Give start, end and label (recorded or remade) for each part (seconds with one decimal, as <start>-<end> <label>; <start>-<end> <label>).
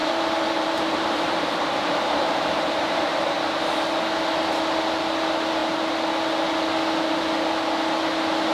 0.0-3.1 remade; 3.1-8.5 recorded